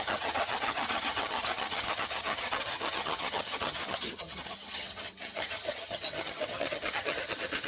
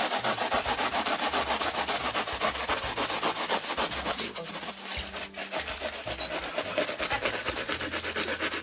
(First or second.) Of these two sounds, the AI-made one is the first